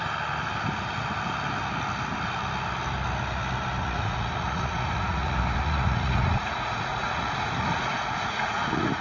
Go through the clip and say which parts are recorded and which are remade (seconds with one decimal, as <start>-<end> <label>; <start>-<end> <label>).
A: 0.0-3.8 recorded; 3.8-9.0 remade